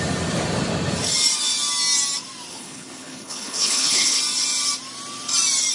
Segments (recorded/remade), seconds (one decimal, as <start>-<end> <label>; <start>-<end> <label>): 0.0-2.5 recorded; 2.5-4.2 remade; 4.2-5.7 recorded